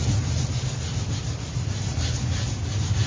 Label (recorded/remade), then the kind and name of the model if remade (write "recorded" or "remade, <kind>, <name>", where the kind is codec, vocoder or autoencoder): recorded